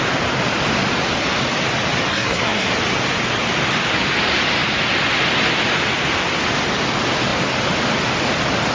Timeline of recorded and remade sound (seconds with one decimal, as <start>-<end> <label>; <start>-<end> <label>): 0.0-2.1 recorded; 2.1-2.7 remade; 2.7-8.7 recorded